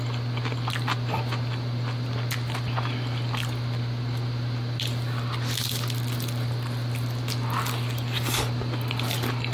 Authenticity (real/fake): real